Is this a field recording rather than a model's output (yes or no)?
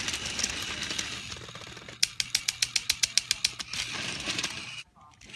yes